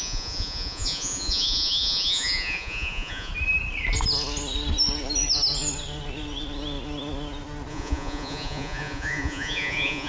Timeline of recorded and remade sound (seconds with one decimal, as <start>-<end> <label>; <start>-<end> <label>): 0.0-3.3 remade; 3.3-7.7 recorded; 7.7-10.1 remade